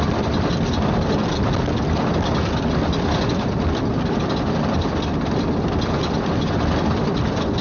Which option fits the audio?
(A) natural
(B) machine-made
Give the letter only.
A